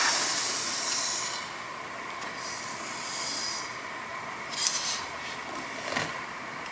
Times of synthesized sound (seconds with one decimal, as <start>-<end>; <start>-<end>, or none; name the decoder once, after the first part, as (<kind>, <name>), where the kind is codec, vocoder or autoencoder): 4.1-5.0 (vocoder, BigVGAN v2)